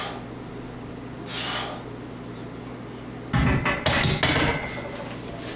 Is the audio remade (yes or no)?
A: no